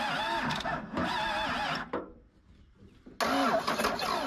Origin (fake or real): real